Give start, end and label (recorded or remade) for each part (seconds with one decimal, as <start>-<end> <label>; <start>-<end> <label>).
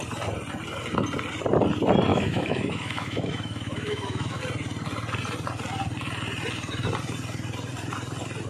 0.0-2.1 recorded; 2.1-4.4 remade; 4.4-8.5 recorded